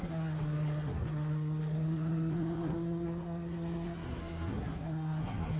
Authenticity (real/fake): fake